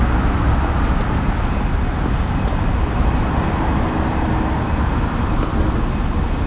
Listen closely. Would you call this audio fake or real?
real